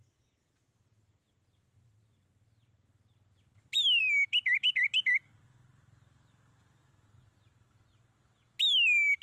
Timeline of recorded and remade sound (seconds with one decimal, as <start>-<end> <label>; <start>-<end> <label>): 0.0-9.2 recorded